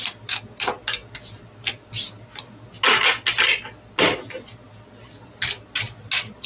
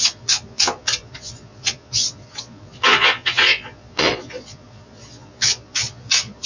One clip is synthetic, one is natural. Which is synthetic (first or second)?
second